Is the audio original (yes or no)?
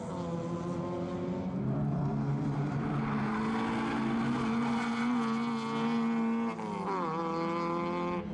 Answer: yes